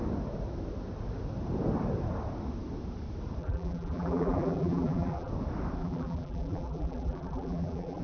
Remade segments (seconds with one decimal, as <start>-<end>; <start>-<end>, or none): 3.4-5.3; 5.8-8.0